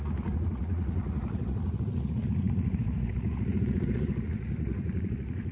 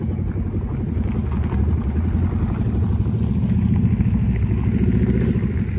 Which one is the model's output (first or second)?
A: first